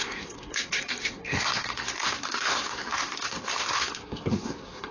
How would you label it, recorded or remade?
remade